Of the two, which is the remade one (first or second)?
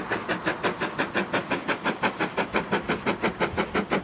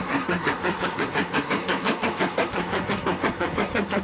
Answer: second